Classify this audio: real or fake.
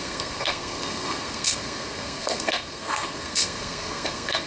fake